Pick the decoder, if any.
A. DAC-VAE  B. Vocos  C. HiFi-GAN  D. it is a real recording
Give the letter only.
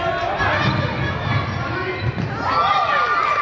D